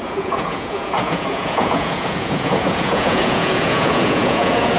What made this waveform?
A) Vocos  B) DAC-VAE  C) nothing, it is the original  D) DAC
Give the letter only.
A